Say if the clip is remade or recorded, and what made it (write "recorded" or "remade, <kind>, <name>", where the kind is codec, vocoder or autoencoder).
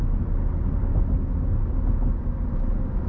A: recorded